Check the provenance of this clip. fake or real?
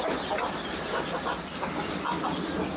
real